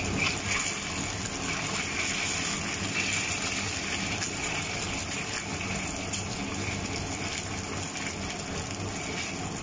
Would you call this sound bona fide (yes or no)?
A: yes